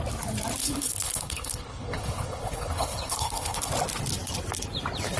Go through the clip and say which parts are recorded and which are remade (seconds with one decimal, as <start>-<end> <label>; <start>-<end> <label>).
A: 0.0-0.6 recorded; 0.6-3.7 remade; 3.7-5.2 recorded